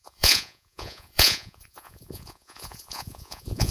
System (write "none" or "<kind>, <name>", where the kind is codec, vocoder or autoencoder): vocoder, Vocos